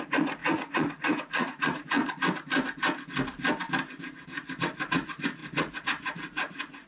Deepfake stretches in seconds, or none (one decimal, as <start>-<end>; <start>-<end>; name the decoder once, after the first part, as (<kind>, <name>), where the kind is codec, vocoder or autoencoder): 0.0-2.0 (vocoder, Vocos); 4.6-6.9